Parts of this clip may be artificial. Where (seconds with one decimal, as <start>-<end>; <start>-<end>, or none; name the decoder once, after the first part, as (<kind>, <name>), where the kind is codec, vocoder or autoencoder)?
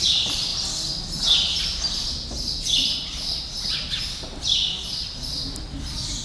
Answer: none